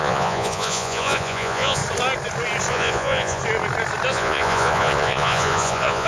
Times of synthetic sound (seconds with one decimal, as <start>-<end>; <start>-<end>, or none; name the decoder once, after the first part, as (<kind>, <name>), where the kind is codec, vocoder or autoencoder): 0.0-1.8 (vocoder, Vocos); 2.7-3.4; 4.1-6.1